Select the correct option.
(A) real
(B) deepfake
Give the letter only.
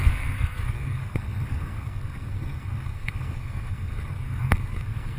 B